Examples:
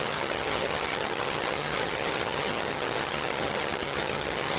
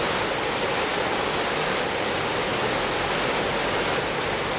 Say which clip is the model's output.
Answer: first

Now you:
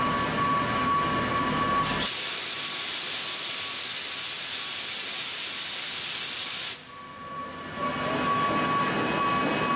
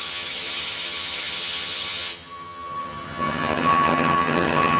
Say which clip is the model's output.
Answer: second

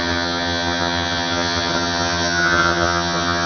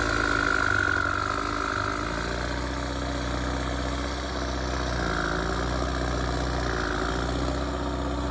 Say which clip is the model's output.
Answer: first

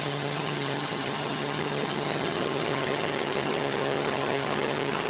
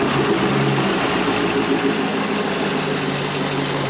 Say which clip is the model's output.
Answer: first